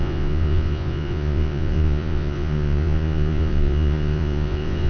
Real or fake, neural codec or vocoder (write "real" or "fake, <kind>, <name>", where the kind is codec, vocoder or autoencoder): fake, vocoder, Vocos